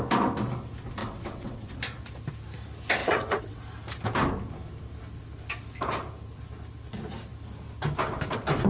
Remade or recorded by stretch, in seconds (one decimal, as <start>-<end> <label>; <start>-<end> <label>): 0.0-1.0 recorded; 1.0-1.8 remade; 1.8-3.0 recorded; 3.0-3.6 remade; 3.6-8.7 recorded